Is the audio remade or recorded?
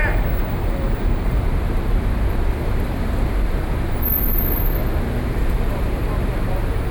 remade